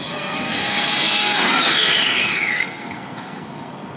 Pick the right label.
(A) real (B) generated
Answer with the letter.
B